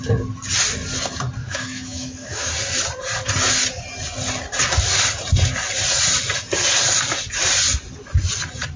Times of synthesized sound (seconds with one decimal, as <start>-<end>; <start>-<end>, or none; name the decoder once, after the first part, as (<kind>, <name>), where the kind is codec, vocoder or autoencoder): 1.4-2.5 (autoencoder, DAC-VAE)